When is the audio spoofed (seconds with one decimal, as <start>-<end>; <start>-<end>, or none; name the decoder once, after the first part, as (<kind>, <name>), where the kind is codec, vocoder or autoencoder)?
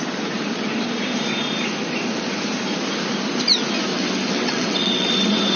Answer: 3.9-5.6 (vocoder, WaveNeXt)